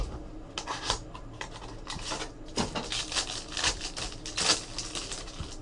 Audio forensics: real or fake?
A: real